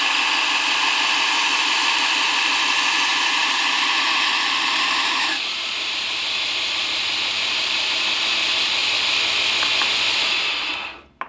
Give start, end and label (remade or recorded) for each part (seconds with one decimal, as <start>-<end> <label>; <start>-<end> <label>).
0.0-3.1 recorded; 3.1-8.2 remade; 8.2-11.3 recorded